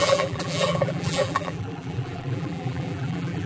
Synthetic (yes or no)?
yes